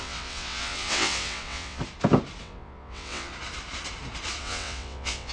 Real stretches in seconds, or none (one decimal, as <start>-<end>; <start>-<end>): 1.8-2.4; 3.3-4.4